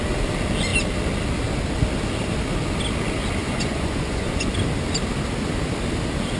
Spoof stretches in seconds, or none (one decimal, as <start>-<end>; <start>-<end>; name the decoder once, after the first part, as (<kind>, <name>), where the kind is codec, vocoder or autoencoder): 3.4-4.5 (vocoder, Vocos)